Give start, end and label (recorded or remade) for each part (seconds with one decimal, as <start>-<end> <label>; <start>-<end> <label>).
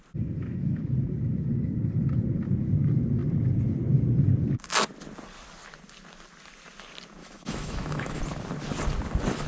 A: 0.0-7.2 recorded; 7.2-8.2 remade; 8.2-9.5 recorded